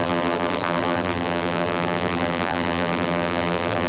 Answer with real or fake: fake